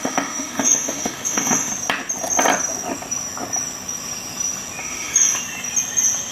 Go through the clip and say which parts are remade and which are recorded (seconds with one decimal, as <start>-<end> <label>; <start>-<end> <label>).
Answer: 0.0-1.7 remade; 1.7-4.8 recorded; 4.8-5.4 remade; 5.4-6.3 recorded